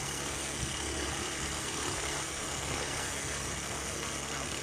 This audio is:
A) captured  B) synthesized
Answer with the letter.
B